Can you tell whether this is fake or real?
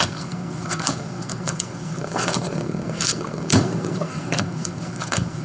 fake